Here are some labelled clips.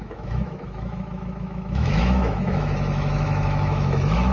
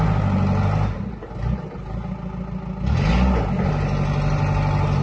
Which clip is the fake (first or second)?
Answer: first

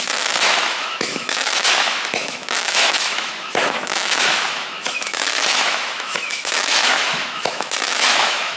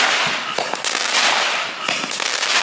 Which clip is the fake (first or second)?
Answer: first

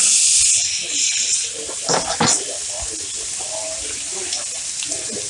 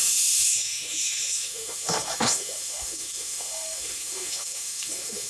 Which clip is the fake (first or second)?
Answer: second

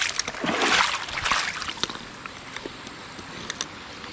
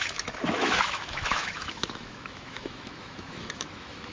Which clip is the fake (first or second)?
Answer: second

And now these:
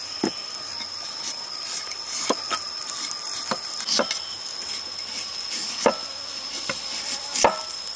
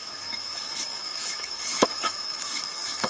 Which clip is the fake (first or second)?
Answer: second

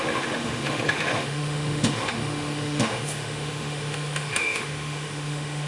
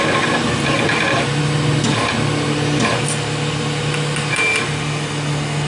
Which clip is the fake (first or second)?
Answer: first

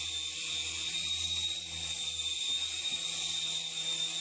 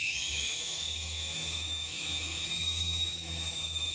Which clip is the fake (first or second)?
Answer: second